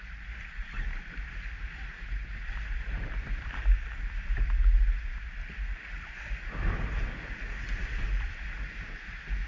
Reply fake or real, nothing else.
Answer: real